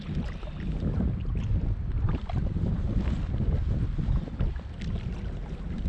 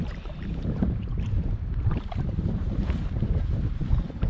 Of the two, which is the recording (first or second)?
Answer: first